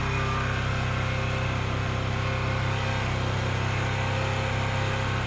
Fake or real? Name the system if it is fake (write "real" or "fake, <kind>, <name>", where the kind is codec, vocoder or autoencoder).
real